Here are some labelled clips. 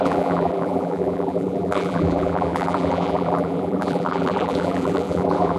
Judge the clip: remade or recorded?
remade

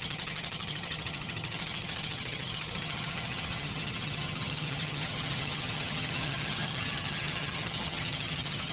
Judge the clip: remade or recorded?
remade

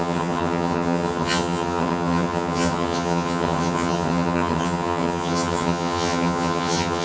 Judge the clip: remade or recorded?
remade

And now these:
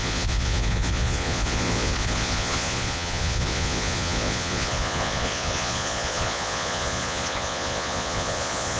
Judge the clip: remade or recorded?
remade